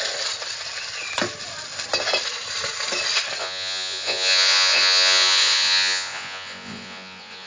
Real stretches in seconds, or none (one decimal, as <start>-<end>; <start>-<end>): 0.0-3.4